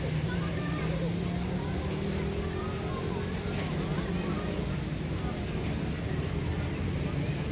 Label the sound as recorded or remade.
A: recorded